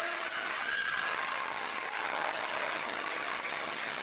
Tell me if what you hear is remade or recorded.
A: remade